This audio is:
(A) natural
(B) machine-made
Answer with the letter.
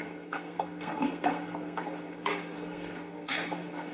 B